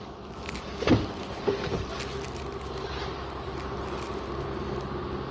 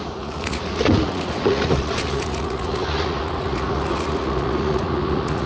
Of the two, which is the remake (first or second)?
second